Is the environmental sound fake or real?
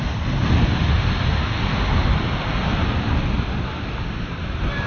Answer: real